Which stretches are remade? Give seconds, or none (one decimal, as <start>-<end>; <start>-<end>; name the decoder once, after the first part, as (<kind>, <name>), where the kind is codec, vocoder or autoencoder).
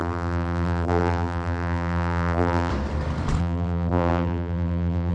0.0-2.7 (vocoder, BigVGAN v2); 3.4-5.1